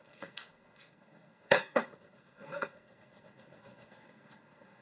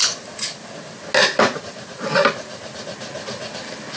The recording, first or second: second